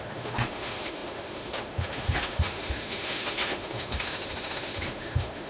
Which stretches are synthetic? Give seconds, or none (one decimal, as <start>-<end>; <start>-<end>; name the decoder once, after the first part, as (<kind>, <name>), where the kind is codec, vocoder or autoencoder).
0.0-5.5 (autoencoder, DAC-VAE)